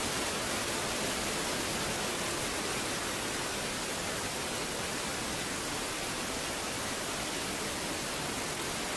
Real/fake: real